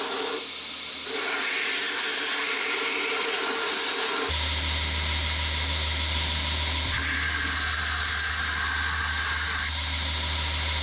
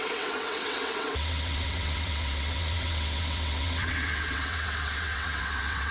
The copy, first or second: second